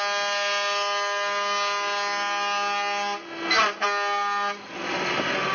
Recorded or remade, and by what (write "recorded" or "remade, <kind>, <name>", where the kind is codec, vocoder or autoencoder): recorded